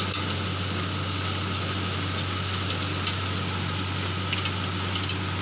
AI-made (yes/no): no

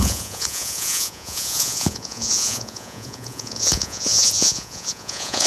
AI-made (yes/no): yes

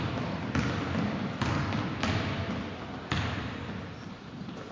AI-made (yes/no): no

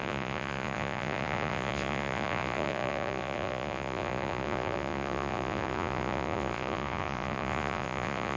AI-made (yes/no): yes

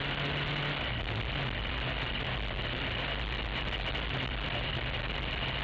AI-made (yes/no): no